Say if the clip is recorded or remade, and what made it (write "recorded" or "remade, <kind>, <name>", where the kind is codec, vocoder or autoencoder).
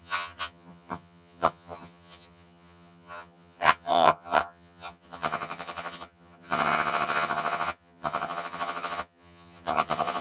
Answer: remade, vocoder, HiFi-GAN